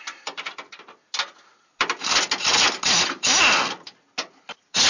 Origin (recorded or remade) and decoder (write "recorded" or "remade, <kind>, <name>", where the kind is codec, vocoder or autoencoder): recorded